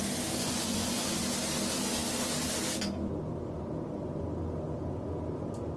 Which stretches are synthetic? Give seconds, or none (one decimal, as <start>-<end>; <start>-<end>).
0.4-1.2